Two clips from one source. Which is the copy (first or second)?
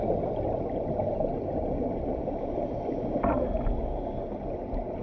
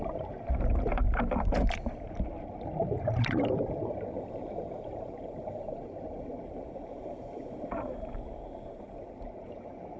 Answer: second